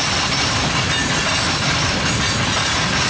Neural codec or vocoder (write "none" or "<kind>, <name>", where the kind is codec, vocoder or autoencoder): none